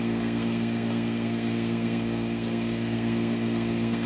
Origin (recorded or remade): remade